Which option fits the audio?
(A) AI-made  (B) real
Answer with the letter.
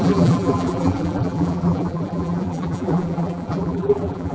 A